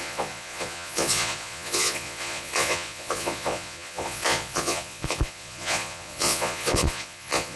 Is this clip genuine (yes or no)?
no